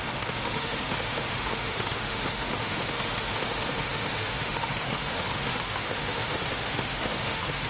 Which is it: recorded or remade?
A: remade